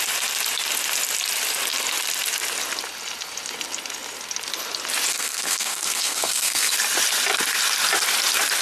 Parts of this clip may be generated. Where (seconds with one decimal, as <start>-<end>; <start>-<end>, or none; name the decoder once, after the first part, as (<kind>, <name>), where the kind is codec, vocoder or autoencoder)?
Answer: 5.1-6.7 (codec, SNAC)